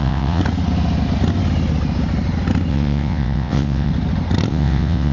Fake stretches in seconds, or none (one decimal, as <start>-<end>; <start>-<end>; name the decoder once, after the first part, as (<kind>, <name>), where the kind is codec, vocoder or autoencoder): 0.0-0.4 (vocoder, WaveNeXt); 2.7-3.9; 4.5-5.1